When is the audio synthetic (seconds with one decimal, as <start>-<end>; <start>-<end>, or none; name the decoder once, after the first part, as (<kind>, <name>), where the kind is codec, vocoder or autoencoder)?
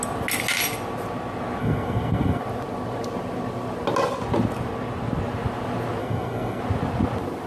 1.6-2.4 (codec, SNAC); 6.0-6.6